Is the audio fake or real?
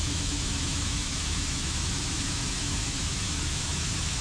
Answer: fake